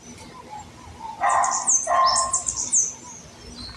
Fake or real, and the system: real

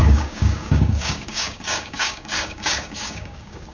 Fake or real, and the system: fake, codec, DAC